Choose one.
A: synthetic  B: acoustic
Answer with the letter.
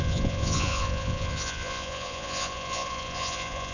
A